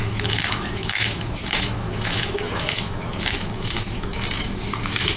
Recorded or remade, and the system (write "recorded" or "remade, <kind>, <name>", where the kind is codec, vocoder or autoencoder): remade, autoencoder, DAC-VAE